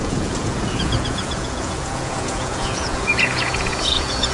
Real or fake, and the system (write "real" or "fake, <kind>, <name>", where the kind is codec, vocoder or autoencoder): fake, vocoder, Vocos